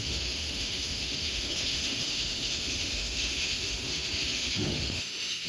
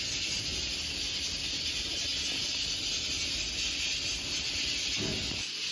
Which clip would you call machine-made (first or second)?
first